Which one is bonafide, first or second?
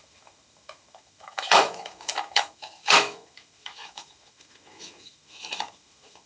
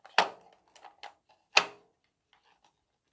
second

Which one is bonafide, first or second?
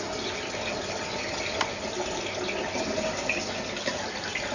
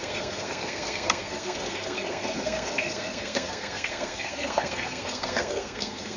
first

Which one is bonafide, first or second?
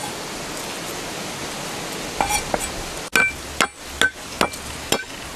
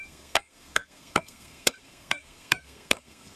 first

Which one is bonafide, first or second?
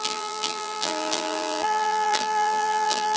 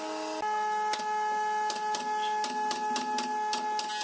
second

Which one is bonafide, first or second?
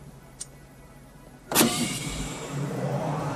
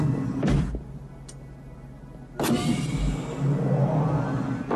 second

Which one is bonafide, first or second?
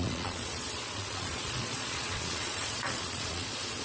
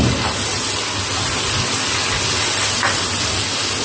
second